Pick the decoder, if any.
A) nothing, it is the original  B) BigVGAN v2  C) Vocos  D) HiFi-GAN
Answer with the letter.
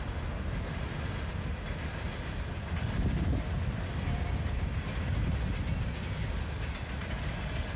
A